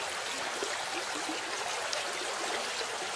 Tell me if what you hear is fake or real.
real